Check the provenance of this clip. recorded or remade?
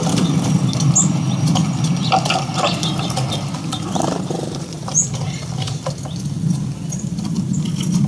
recorded